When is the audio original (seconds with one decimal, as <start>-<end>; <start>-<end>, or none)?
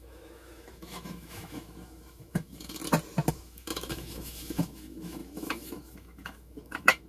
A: 2.8-3.3